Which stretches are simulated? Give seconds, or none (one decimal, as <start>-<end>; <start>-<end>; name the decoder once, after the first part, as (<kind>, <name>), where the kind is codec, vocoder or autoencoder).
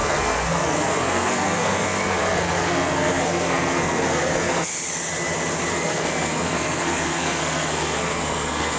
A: 0.0-4.7 (codec, SNAC); 5.7-8.8